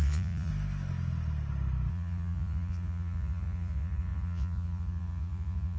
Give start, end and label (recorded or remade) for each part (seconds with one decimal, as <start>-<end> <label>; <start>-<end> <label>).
0.0-0.5 remade; 0.5-1.9 recorded; 1.9-5.8 remade